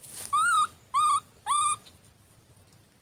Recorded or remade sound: recorded